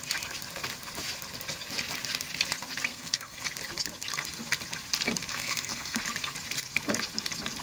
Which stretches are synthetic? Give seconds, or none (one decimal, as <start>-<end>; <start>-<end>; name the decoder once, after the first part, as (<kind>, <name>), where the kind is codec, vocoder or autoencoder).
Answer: 2.9-3.4 (codec, SNAC); 5.3-6.0